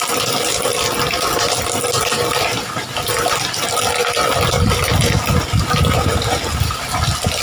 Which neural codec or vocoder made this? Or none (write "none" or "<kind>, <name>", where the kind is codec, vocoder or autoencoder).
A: none